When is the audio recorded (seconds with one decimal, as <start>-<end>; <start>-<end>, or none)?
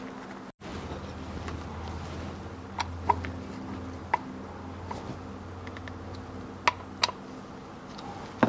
0.0-8.5